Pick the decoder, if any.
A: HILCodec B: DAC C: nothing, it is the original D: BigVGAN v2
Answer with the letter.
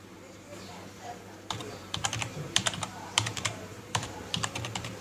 D